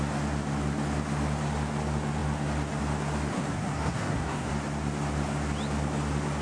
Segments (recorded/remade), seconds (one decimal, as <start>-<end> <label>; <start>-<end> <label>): 0.0-3.3 recorded; 3.3-4.5 remade; 4.5-6.4 recorded